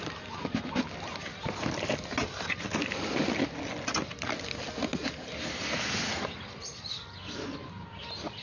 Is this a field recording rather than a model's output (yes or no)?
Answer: yes